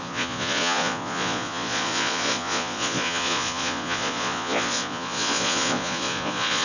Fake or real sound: fake